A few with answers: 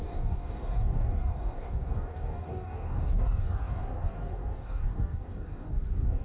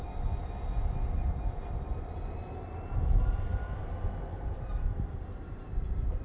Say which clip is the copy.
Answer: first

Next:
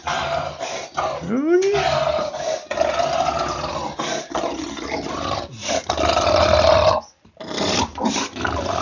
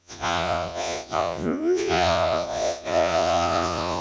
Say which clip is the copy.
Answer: second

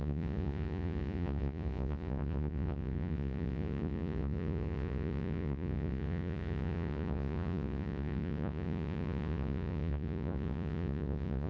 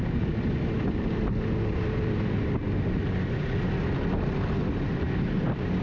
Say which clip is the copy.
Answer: first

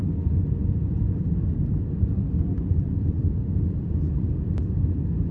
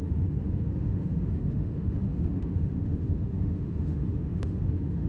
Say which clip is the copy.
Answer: second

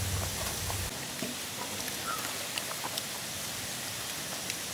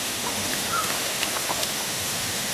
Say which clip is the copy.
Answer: second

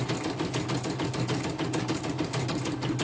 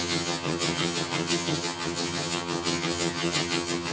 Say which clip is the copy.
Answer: second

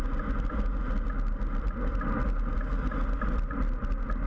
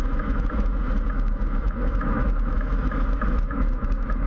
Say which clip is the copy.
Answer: second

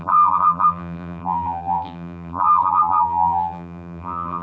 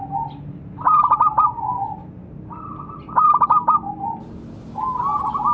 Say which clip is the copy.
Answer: first